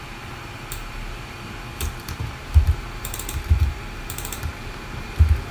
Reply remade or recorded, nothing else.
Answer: remade